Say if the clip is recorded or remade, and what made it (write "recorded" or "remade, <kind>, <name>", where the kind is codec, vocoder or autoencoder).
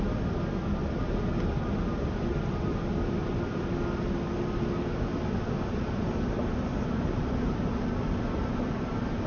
recorded